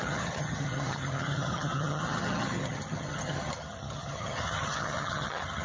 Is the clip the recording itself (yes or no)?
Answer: no